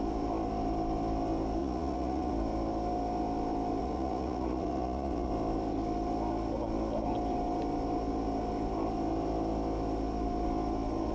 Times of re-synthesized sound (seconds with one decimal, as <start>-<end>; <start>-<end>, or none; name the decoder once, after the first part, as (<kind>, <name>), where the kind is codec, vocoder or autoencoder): 1.6-2.3 (vocoder, Vocos); 3.8-5.3